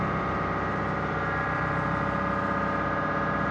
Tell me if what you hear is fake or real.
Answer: real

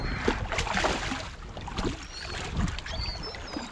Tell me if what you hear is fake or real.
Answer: real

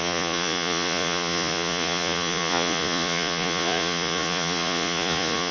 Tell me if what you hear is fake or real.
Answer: fake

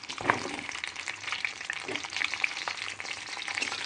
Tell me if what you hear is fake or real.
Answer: fake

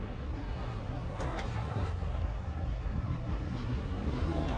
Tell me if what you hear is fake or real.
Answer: fake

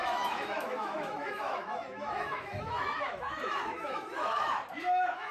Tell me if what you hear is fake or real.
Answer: fake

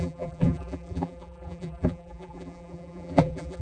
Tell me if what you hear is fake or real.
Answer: fake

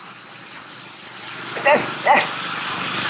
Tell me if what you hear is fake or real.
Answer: real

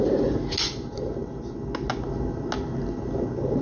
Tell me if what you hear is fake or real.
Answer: real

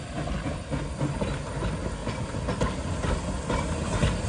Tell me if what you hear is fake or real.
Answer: real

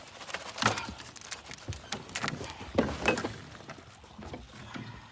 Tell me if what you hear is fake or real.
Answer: real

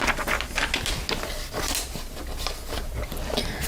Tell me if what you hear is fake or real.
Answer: real